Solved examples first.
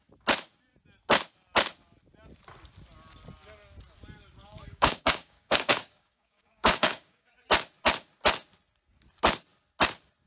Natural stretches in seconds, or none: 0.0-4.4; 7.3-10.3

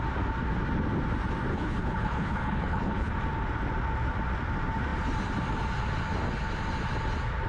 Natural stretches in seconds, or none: 0.0-1.5; 3.1-7.5

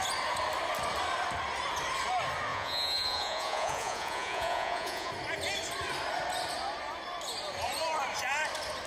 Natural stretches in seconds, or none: 0.0-2.5; 5.1-8.9

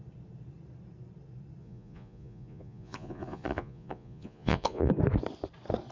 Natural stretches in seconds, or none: 0.0-1.6; 4.9-5.9

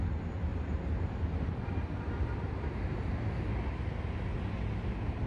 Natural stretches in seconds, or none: 0.0-5.3

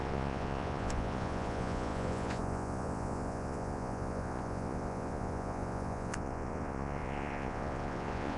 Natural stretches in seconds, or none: none

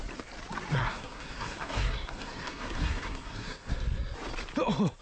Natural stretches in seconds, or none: 0.0-0.8; 3.7-5.0

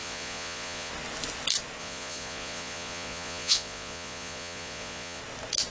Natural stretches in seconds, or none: 0.9-1.8; 5.2-5.7